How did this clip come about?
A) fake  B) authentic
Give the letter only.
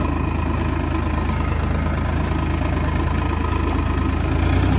B